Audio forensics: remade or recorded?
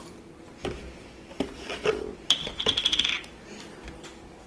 remade